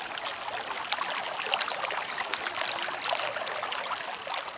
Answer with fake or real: real